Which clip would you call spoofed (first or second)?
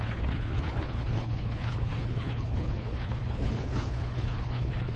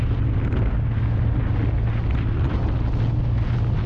first